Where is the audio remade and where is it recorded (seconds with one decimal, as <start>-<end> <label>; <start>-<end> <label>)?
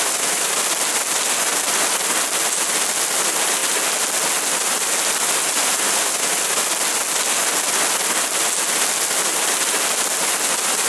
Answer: 0.0-10.9 recorded